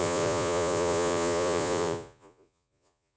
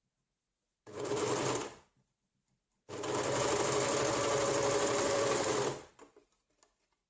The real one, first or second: second